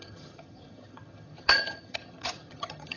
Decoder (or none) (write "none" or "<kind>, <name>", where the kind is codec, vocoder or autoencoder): vocoder, HiFi-GAN